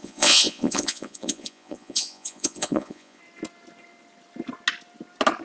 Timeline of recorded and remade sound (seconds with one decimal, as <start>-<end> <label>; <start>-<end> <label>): 0.0-3.2 remade; 3.2-5.4 recorded